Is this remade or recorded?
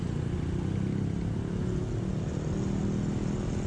recorded